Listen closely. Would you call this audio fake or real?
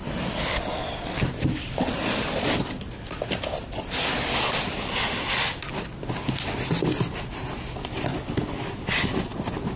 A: real